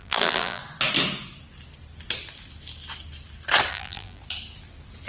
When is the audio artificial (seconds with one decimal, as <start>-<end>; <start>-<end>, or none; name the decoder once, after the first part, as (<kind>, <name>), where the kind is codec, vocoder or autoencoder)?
0.0-0.6 (vocoder, BigVGAN v2); 3.7-4.2